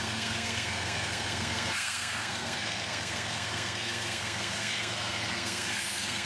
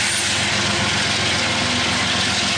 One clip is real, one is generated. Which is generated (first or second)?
first